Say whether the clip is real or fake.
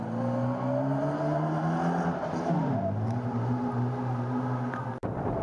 real